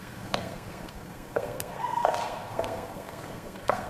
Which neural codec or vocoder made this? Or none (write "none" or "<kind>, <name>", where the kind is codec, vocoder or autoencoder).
codec, SNAC